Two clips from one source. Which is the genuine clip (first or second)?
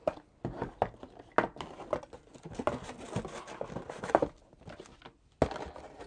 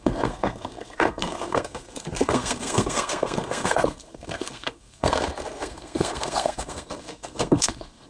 first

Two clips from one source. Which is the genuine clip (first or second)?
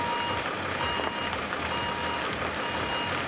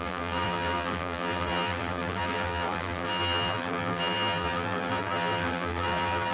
first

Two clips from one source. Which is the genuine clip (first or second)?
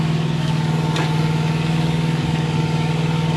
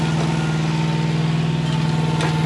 second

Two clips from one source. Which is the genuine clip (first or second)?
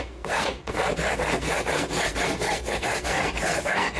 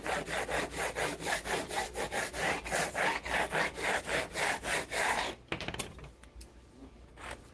second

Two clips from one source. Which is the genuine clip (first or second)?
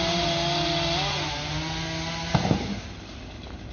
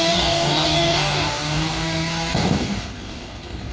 first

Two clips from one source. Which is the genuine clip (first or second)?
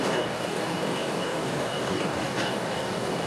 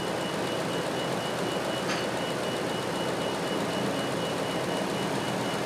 second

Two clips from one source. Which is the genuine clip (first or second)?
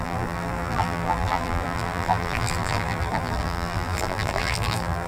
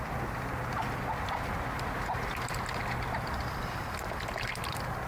second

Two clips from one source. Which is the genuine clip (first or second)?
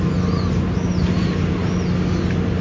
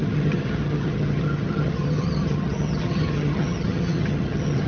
first